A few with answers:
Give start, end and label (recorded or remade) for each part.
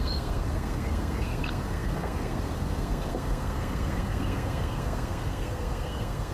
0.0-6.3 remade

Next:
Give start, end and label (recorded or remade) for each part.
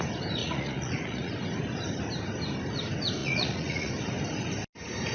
0.0-0.4 recorded; 0.4-1.3 remade; 1.3-3.2 recorded; 3.2-3.9 remade; 3.9-5.1 recorded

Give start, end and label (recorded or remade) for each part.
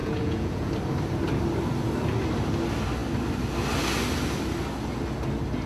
0.0-0.7 remade; 0.7-5.7 recorded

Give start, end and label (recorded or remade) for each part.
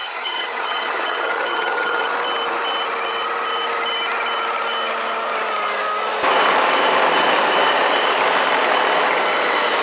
0.0-2.1 remade; 2.1-9.8 recorded